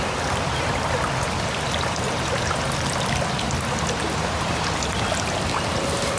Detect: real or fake real